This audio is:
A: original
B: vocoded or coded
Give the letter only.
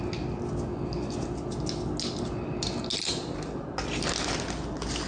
A